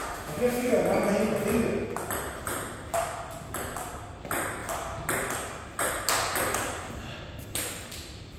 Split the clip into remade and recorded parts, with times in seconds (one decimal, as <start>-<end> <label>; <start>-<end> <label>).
0.0-0.7 remade; 0.7-8.4 recorded

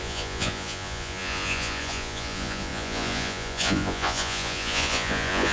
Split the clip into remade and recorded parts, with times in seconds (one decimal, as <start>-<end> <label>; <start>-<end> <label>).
0.0-5.5 remade

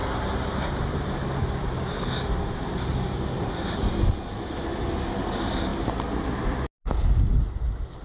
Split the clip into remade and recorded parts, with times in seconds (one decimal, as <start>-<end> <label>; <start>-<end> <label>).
0.0-4.5 remade; 4.5-8.0 recorded

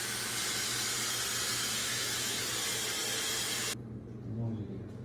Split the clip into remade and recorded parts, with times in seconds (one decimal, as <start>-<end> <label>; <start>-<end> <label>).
0.0-1.8 recorded; 1.8-2.5 remade; 2.5-5.0 recorded

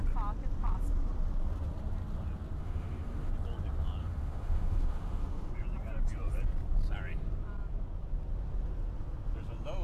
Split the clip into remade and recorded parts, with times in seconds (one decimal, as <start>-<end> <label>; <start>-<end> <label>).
0.0-2.6 recorded; 2.6-3.3 remade; 3.3-4.0 recorded; 4.0-5.5 remade; 5.5-9.8 recorded

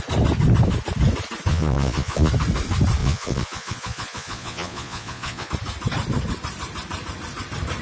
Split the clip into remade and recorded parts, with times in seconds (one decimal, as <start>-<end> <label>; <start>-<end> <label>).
0.0-1.5 recorded; 1.5-2.3 remade; 2.3-3.0 recorded; 3.0-5.5 remade; 5.5-7.8 recorded